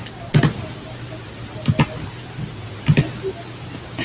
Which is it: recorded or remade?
recorded